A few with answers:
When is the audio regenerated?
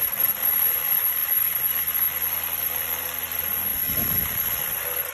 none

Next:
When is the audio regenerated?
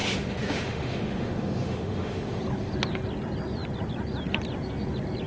0.0-2.4 (autoencoder, DAC-VAE)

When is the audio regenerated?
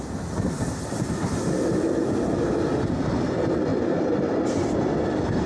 none